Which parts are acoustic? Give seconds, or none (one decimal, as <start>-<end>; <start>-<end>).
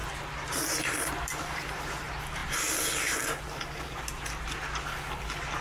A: 2.0-5.6